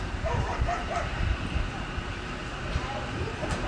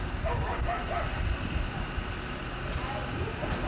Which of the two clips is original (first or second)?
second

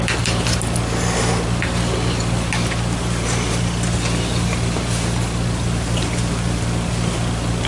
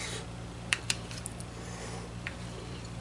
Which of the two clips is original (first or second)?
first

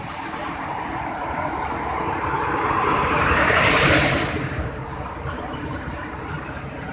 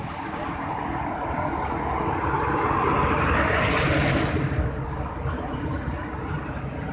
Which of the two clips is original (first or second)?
second